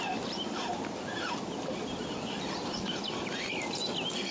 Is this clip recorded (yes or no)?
yes